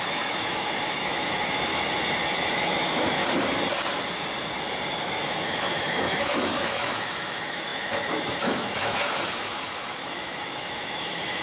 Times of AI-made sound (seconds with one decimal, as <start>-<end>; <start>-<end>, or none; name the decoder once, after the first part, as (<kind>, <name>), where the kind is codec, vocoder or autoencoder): 0.0-1.7 (autoencoder, DAC-VAE); 2.5-3.2; 5.0-11.4